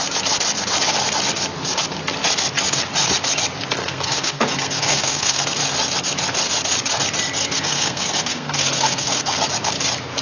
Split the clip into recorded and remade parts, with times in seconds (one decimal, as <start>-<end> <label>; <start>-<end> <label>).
0.0-3.8 recorded; 3.8-5.4 remade; 5.4-7.4 recorded; 7.4-9.4 remade; 9.4-10.2 recorded